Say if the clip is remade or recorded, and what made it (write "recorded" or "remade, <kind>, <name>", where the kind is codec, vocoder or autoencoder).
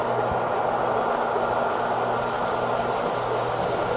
recorded